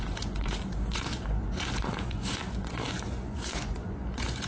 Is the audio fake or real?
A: fake